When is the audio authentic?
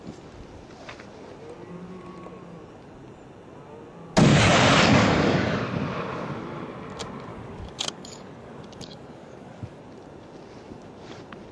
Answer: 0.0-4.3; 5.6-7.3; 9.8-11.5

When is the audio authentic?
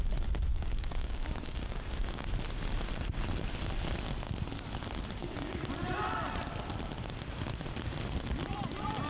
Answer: 0.0-0.5; 2.3-5.2; 5.7-9.1